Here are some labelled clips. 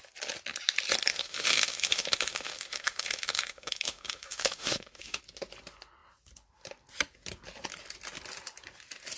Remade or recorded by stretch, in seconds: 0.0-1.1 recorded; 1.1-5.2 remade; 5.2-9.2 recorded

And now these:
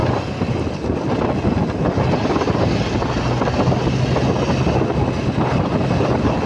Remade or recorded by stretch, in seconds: 0.0-6.5 recorded